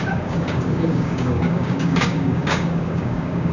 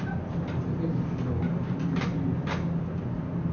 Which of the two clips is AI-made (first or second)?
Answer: first